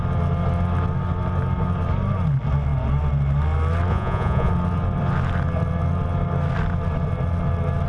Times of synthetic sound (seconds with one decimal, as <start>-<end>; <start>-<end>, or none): 3.9-4.5